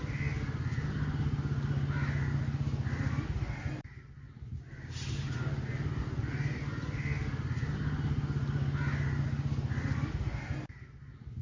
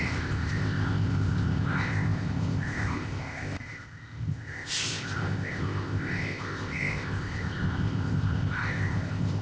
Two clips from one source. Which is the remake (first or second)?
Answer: second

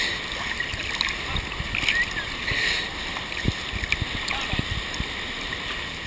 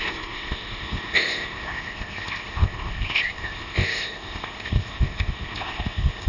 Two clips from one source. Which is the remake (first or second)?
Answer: second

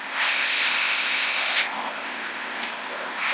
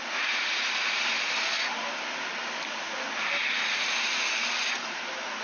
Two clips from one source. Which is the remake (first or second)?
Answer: first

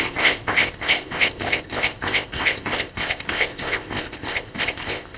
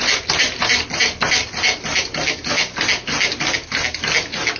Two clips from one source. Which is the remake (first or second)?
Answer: first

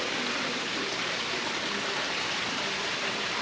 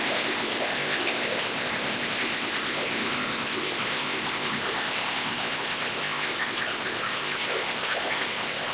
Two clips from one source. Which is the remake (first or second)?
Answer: second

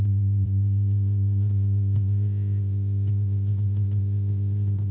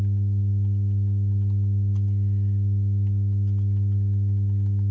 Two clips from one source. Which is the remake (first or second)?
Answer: first